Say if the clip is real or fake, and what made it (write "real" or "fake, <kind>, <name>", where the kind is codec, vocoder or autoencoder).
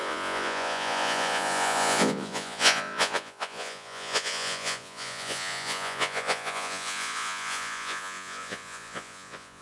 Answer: fake, vocoder, Vocos